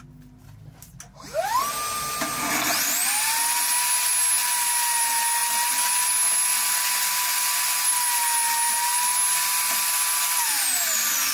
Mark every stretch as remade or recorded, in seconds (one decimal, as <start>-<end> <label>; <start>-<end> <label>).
0.0-11.3 recorded